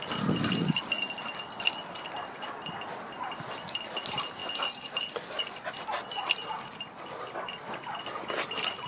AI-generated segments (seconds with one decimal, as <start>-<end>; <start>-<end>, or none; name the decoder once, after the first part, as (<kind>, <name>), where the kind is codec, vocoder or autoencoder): 0.0-4.4 (vocoder, BigVGAN v2); 5.4-8.9